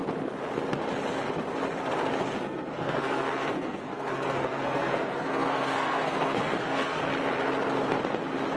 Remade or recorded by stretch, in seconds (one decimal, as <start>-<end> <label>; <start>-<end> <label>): 0.0-2.4 recorded; 2.4-7.0 remade; 7.0-8.6 recorded